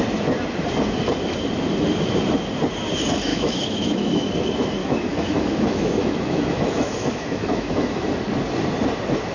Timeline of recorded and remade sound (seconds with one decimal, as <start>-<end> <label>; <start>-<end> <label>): 0.0-3.3 recorded; 3.3-4.3 remade; 4.3-4.8 recorded; 4.8-8.1 remade; 8.1-9.3 recorded